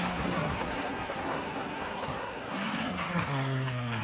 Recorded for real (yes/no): no